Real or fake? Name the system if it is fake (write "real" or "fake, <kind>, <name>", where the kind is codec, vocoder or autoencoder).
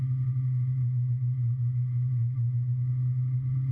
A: real